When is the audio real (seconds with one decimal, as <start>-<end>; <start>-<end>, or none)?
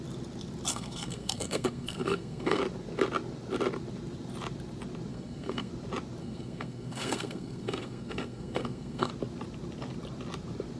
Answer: 0.0-0.7; 2.6-5.1; 5.7-6.2; 9.1-10.8